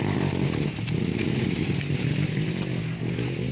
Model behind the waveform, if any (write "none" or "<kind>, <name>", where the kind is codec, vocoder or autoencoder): none